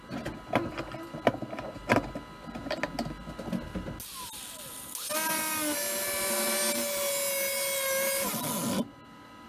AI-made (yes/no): no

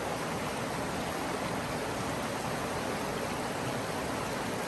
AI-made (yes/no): no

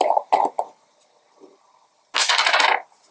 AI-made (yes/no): no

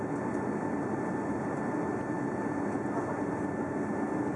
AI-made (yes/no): no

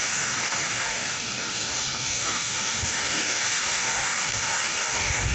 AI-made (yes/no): yes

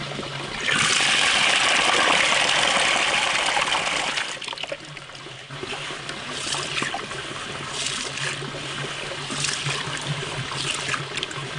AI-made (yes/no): no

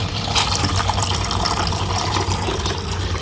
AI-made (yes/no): yes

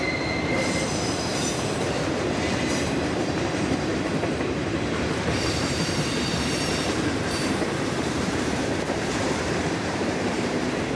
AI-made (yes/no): yes